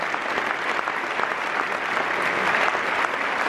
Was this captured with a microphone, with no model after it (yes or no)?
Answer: yes